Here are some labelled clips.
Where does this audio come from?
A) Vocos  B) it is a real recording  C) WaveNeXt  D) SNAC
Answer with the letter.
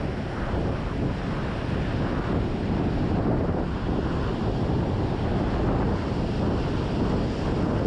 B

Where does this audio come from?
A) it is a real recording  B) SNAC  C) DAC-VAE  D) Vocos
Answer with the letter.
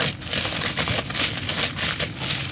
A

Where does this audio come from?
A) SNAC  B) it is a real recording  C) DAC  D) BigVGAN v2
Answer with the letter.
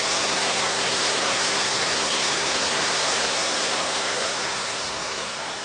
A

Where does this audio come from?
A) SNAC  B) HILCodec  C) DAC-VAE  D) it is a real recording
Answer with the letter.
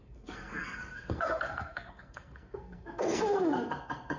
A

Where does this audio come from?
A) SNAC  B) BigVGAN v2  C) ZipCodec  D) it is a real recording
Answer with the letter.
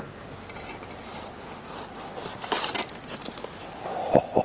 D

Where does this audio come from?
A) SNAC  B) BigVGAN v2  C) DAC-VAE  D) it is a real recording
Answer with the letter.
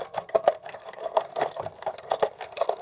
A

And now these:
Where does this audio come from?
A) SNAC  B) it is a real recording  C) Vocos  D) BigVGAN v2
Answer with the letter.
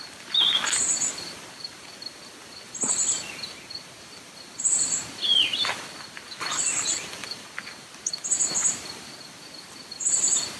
B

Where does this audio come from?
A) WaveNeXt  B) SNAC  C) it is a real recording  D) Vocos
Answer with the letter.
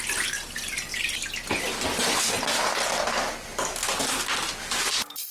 C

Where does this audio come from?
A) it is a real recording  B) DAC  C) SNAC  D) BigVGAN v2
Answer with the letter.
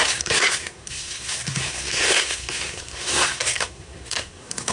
C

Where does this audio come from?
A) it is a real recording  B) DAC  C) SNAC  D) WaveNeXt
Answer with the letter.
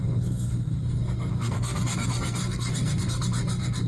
C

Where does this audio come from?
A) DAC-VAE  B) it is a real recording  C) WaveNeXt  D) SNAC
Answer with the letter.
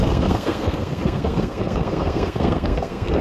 D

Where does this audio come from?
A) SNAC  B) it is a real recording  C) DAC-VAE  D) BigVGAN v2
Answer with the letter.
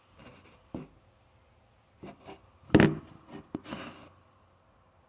B